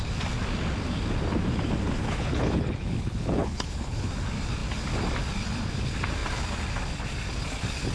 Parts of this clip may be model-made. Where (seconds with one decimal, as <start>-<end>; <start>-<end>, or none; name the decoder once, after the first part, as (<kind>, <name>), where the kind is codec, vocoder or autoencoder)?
2.0-4.1 (codec, HILCodec)